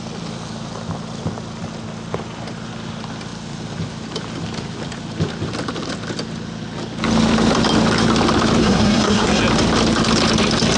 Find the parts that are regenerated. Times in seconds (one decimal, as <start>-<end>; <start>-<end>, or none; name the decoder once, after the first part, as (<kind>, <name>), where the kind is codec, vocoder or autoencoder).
8.6-9.4 (codec, SNAC)